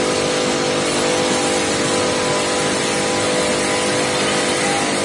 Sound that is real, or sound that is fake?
real